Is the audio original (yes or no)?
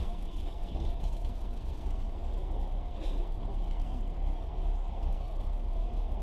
no